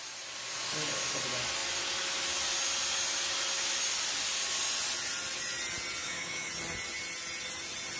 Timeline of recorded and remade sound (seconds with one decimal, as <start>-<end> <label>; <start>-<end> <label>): 0.0-6.0 recorded; 6.0-6.5 remade; 6.5-8.0 recorded